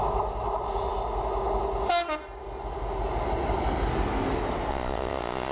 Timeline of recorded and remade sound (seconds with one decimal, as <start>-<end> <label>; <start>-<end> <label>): 0.0-4.7 recorded; 4.7-5.5 remade